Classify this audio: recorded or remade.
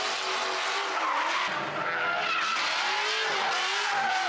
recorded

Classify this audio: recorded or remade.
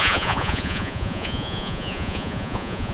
remade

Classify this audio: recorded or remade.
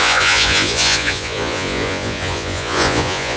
remade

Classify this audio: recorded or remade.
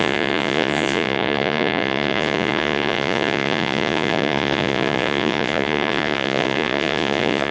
remade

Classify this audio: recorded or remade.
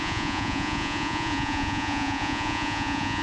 remade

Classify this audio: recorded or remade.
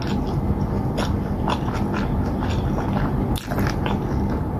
recorded